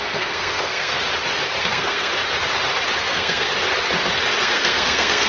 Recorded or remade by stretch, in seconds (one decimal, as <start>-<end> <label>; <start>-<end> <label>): 0.0-0.9 remade; 0.9-1.6 recorded; 1.6-2.1 remade; 2.1-3.0 recorded; 3.0-3.5 remade; 3.5-4.4 recorded; 4.4-5.3 remade